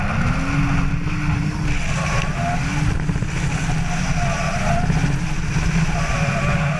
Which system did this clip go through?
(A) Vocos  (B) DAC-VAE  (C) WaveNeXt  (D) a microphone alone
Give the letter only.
D